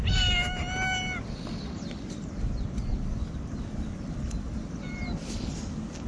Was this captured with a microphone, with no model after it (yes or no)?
yes